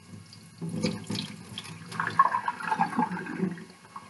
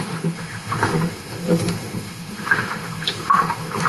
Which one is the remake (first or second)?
second